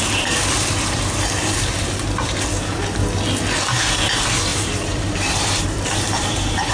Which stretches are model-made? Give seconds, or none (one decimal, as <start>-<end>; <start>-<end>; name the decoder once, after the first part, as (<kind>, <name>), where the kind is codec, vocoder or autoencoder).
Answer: 0.0-3.0 (vocoder, BigVGAN v2); 4.1-6.7

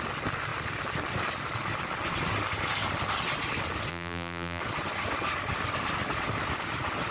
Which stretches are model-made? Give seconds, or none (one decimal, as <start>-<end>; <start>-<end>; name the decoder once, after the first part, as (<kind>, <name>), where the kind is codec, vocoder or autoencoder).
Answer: 3.9-4.6 (vocoder, BigVGAN v2)

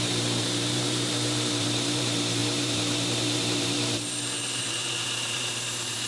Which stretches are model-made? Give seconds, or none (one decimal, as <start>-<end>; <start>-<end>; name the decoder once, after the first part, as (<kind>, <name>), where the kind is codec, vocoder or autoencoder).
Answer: 0.0-6.1 (vocoder, BigVGAN v2)

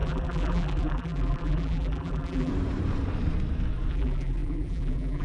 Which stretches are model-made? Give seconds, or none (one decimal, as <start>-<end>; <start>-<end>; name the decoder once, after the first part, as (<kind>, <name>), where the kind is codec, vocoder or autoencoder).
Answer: 0.0-2.5 (vocoder, BigVGAN v2); 3.9-5.2

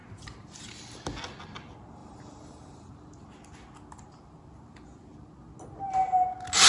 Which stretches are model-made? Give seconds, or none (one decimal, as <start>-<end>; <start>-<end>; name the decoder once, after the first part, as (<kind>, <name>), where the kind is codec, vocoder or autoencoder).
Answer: 0.0-0.8 (vocoder, BigVGAN v2); 2.0-3.2

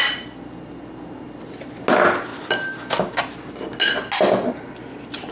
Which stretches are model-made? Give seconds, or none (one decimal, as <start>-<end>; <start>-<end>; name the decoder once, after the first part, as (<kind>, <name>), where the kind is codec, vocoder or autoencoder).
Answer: 2.3-2.8 (vocoder, BigVGAN v2)